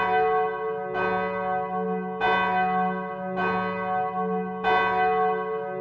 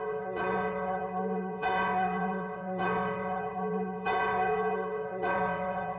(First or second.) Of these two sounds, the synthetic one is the second